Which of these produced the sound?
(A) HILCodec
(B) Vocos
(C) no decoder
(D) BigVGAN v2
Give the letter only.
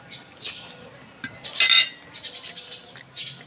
C